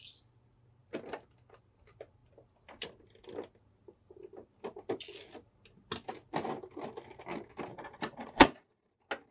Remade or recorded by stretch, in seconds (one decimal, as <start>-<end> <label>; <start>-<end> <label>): 0.0-7.7 recorded; 7.7-8.9 remade; 8.9-9.3 recorded